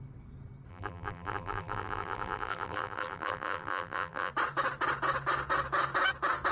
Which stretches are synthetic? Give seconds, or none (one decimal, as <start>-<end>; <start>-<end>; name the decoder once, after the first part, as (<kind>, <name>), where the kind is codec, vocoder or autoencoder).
0.7-4.3 (vocoder, BigVGAN v2)